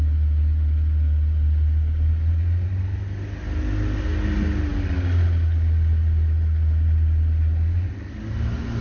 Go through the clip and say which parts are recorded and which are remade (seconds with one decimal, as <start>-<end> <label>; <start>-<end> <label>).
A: 0.0-8.8 recorded